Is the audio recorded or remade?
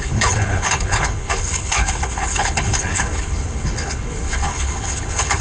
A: remade